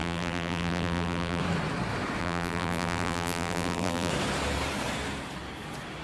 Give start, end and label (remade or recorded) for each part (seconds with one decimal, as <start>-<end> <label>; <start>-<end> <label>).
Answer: 0.0-1.4 remade; 1.4-2.2 recorded; 2.2-4.1 remade; 4.1-6.0 recorded

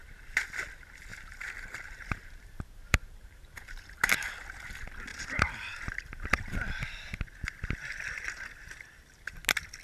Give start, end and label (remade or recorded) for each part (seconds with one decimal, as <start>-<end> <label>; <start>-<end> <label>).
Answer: 0.0-1.1 recorded; 1.1-3.9 remade; 3.9-5.1 recorded; 5.1-6.3 remade; 6.3-9.8 recorded

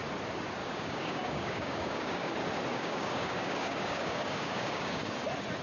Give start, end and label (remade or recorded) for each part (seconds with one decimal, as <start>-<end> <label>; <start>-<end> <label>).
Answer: 0.0-0.6 recorded; 0.6-2.3 remade; 2.3-2.7 recorded; 2.7-5.0 remade; 5.0-5.6 recorded

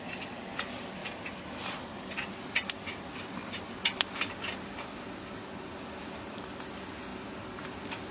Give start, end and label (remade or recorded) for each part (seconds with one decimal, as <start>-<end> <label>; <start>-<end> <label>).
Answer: 0.0-8.1 recorded

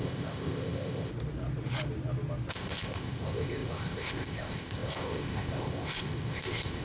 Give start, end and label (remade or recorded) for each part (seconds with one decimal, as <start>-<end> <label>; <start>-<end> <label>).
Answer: 0.0-1.1 remade; 1.1-2.5 recorded; 2.5-6.8 remade

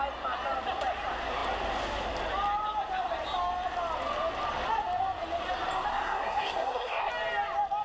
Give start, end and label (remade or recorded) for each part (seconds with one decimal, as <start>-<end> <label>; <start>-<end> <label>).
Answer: 0.0-5.9 recorded; 5.9-7.1 remade; 7.1-7.8 recorded

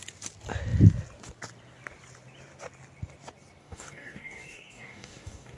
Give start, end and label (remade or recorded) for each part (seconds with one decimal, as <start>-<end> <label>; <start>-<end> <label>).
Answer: 0.0-3.6 recorded; 3.6-5.6 remade